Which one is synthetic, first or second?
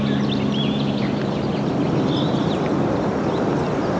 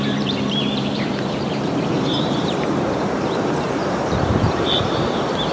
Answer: second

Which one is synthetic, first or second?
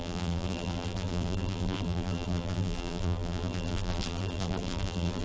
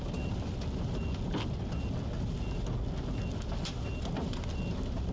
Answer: first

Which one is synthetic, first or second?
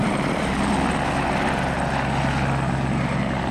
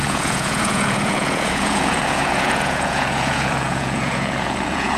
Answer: second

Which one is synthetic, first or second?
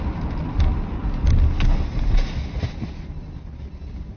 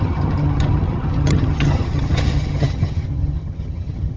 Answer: second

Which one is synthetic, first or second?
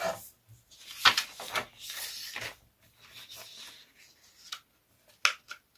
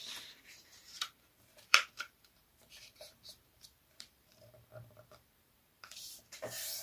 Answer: second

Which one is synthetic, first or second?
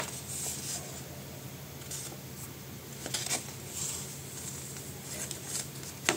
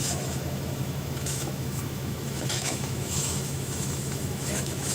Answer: second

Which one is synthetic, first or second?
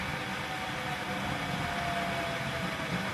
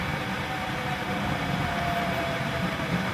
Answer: second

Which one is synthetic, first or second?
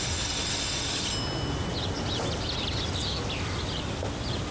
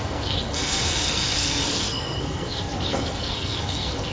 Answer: second